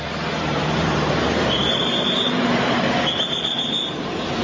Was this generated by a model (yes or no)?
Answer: yes